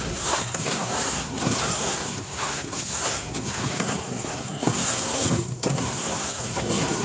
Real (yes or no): no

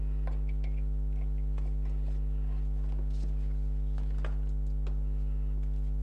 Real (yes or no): yes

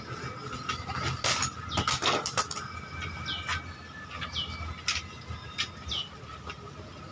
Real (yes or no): yes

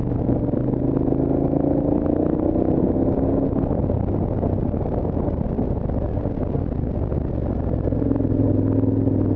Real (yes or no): yes